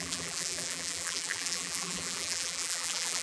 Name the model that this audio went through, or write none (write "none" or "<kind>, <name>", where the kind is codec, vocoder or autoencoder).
vocoder, BigVGAN v2